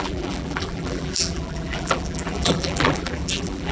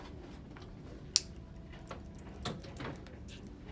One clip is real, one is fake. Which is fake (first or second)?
first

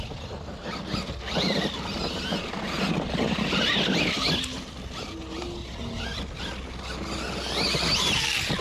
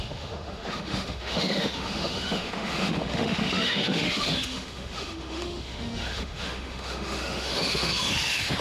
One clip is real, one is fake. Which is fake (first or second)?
second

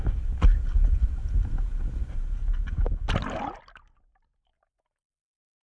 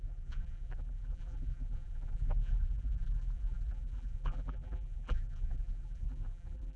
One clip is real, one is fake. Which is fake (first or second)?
second